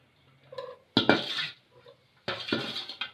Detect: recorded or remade recorded